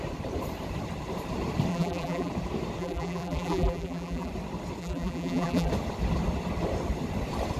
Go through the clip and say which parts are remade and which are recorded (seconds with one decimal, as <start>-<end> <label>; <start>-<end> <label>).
0.0-1.7 recorded; 1.7-2.3 remade; 2.3-2.8 recorded; 2.8-4.3 remade; 4.3-4.8 recorded; 4.8-5.7 remade; 5.7-7.6 recorded